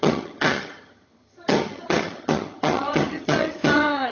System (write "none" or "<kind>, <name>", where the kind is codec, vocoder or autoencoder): vocoder, HiFi-GAN